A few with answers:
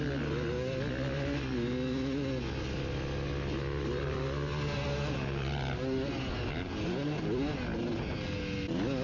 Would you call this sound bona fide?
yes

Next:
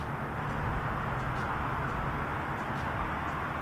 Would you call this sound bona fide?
yes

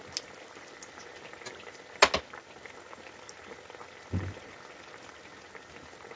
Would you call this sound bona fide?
yes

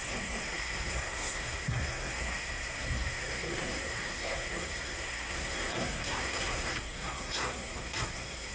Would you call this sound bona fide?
no